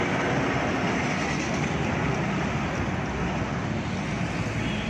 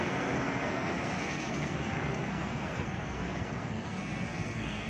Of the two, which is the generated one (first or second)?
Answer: second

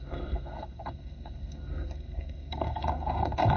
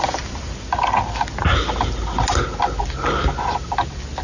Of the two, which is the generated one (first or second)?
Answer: first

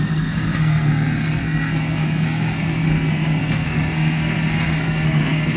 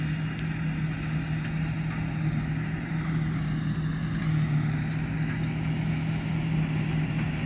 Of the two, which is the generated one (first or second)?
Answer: first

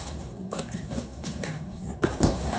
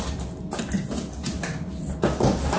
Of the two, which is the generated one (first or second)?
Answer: first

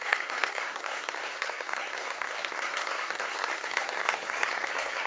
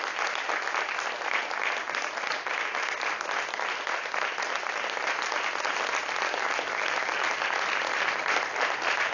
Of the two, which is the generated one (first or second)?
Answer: first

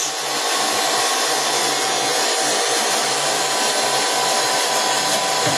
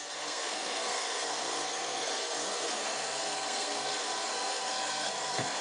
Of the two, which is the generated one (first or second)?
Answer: second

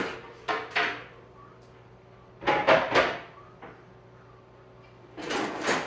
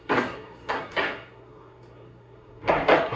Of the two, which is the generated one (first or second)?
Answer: second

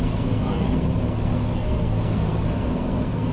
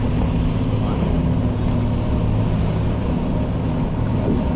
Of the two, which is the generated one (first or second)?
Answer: first